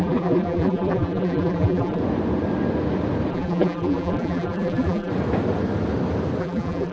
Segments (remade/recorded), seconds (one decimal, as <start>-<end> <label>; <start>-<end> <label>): 0.0-2.0 remade; 2.0-3.3 recorded; 3.3-5.1 remade; 5.1-6.4 recorded; 6.4-6.9 remade